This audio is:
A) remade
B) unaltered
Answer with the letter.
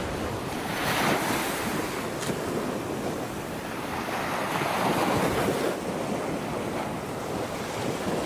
B